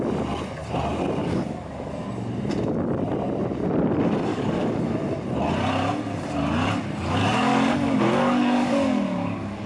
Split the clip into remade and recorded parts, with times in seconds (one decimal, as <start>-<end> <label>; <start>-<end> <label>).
0.0-1.2 recorded; 1.2-1.9 remade; 1.9-4.3 recorded; 4.3-4.8 remade; 4.8-7.2 recorded; 7.2-9.7 remade